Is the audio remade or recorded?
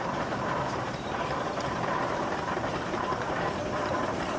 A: remade